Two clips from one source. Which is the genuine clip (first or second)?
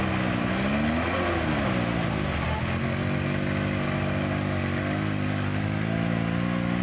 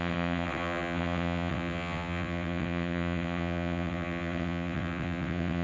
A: first